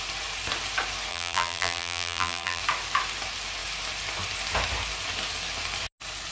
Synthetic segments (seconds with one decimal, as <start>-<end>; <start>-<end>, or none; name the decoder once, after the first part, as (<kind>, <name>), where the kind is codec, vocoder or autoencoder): 1.1-2.6 (vocoder, BigVGAN v2)